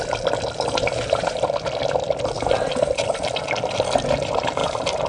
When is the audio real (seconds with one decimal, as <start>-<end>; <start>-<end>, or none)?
0.0-5.1